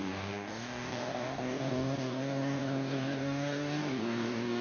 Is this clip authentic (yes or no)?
no